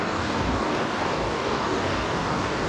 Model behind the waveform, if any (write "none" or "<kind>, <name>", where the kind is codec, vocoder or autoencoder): codec, DAC